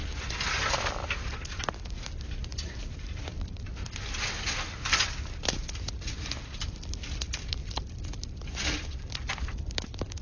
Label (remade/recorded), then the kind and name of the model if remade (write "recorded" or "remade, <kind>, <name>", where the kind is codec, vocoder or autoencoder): recorded